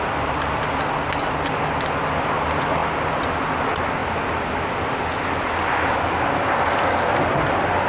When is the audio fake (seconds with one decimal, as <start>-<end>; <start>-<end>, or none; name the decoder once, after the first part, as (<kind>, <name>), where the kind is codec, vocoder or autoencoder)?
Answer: none